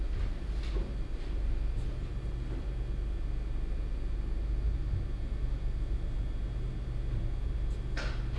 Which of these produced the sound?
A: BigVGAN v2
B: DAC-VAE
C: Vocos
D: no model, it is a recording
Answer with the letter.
D